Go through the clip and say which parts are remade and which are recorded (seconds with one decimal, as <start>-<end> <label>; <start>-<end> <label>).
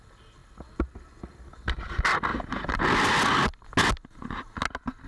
0.0-5.1 recorded